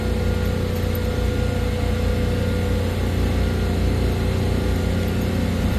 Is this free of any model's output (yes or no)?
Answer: yes